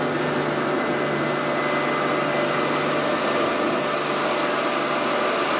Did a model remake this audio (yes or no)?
no